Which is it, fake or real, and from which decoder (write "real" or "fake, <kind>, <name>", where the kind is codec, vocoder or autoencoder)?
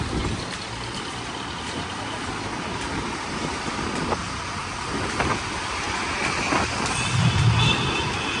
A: real